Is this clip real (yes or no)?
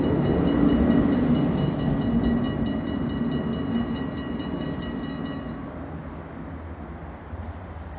yes